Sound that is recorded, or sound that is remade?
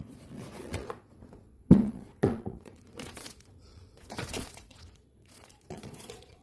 remade